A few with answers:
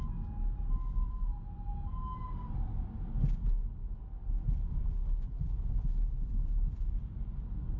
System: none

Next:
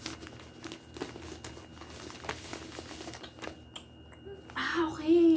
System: none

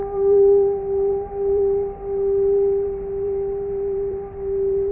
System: vocoder, BigVGAN v2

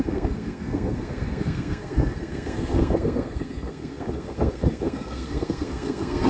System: codec, SNAC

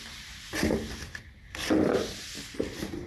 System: none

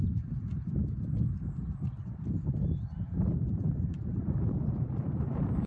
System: none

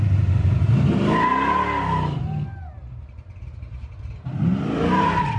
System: none